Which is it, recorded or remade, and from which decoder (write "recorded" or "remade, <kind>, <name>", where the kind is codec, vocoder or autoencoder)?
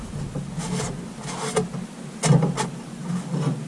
recorded